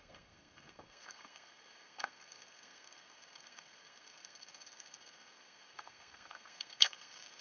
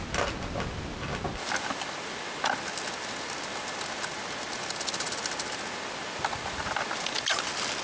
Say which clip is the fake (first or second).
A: first